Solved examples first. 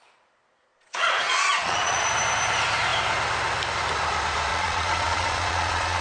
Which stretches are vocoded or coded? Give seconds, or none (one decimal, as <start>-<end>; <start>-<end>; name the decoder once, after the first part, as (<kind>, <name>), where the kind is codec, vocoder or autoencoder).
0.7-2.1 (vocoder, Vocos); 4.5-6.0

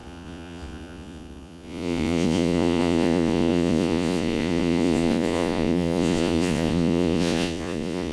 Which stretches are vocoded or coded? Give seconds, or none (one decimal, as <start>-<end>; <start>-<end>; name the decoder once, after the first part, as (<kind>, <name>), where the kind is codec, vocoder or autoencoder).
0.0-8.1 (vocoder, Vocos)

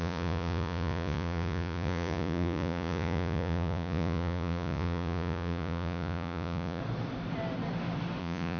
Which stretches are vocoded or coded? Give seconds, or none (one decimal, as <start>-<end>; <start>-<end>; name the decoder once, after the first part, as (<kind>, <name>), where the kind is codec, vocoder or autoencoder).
0.0-6.8 (vocoder, Vocos); 8.2-8.6

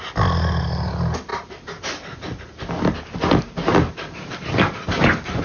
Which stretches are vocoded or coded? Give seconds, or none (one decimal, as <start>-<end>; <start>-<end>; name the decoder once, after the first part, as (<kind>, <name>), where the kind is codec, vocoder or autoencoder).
none

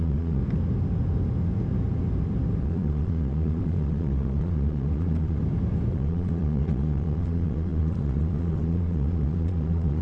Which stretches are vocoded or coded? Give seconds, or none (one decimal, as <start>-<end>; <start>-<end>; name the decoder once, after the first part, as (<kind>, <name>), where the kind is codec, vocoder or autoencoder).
0.0-0.4 (vocoder, Vocos); 2.6-5.4; 5.9-10.0